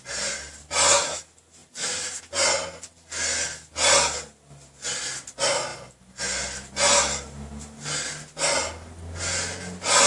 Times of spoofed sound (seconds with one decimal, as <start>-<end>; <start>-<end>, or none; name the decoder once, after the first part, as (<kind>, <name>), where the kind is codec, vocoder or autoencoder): 1.6-2.2 (vocoder, BigVGAN v2); 5.7-6.2